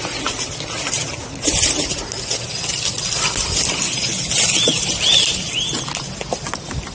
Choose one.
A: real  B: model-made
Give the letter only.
A